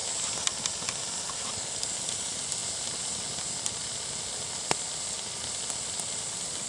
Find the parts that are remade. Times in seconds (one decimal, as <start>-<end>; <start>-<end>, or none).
none